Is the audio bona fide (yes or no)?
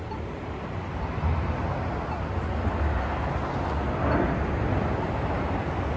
yes